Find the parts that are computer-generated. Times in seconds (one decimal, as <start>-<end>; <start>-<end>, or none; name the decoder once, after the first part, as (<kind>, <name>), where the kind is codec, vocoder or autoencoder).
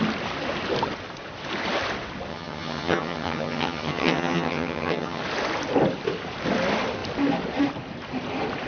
2.3-5.2 (vocoder, HiFi-GAN)